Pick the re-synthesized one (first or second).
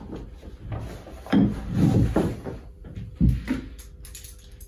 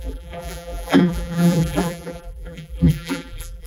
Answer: second